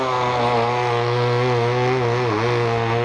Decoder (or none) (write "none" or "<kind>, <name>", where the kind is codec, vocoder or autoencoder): none